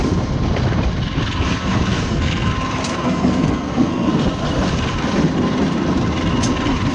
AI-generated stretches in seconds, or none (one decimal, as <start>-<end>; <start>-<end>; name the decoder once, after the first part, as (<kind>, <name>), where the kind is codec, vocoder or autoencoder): 1.9-2.5 (codec, SNAC); 2.9-4.1